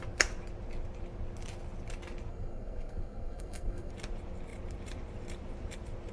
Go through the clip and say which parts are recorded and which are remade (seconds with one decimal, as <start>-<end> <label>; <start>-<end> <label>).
0.0-2.3 recorded; 2.3-3.9 remade; 3.9-6.1 recorded